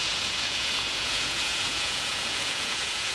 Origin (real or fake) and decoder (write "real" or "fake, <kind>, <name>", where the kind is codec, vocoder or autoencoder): fake, vocoder, Vocos